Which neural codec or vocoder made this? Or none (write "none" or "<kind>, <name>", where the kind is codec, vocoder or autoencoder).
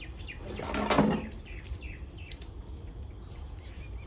none